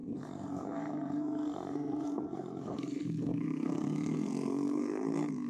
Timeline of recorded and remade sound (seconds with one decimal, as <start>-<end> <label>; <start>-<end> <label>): 0.0-5.5 remade